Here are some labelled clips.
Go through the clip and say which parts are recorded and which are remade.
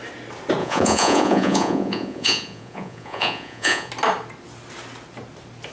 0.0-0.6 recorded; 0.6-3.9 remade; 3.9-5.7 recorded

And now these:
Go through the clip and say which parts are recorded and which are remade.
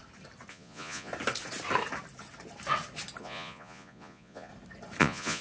0.0-0.5 recorded; 0.5-1.1 remade; 1.1-3.2 recorded; 3.2-4.5 remade; 4.5-5.0 recorded; 5.0-5.4 remade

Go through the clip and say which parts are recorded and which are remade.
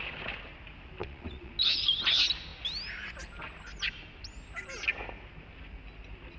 0.0-1.0 recorded; 1.0-1.5 remade; 1.5-6.4 recorded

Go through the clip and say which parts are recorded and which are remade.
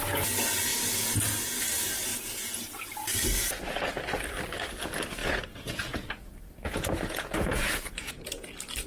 0.0-5.2 recorded; 5.2-8.5 remade; 8.5-8.9 recorded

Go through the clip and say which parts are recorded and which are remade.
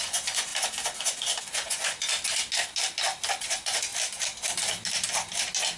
0.0-0.5 remade; 0.5-1.4 recorded; 1.4-2.1 remade; 2.1-3.3 recorded; 3.3-3.9 remade; 3.9-5.8 recorded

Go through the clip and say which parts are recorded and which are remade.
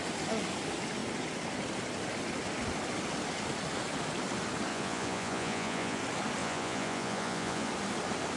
0.0-4.7 recorded; 4.7-6.0 remade; 6.0-6.4 recorded; 6.4-7.7 remade; 7.7-8.4 recorded